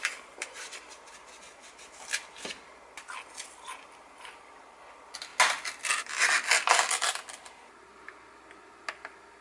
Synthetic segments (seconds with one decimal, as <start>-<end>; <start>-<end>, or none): none